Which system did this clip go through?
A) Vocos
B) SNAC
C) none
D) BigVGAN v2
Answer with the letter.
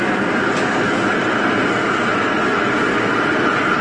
D